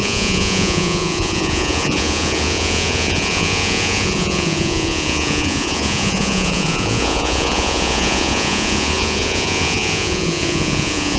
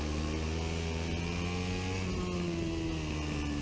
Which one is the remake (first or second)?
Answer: first